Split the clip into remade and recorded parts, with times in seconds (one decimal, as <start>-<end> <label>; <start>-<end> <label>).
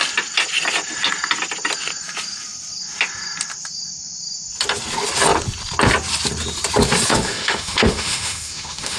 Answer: 0.0-7.1 recorded; 7.1-9.0 remade